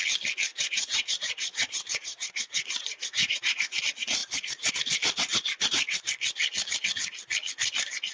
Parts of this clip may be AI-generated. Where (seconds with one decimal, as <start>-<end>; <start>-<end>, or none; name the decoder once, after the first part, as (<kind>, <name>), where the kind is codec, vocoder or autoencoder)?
0.5-3.8 (vocoder, Vocos); 4.2-4.7